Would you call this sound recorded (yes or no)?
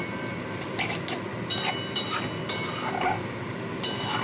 yes